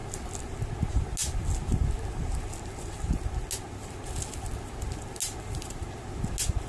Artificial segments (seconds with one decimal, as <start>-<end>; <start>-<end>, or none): none